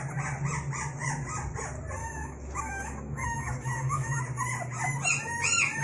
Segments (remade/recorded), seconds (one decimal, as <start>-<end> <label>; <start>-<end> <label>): 0.0-2.0 recorded; 2.0-4.2 remade; 4.2-5.8 recorded